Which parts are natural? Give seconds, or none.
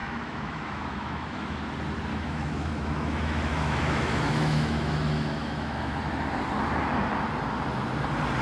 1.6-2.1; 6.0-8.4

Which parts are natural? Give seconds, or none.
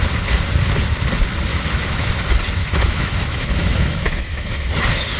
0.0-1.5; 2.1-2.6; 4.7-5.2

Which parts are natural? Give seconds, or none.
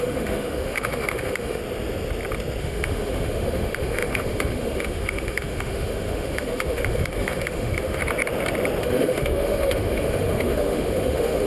1.6-2.6; 8.0-8.8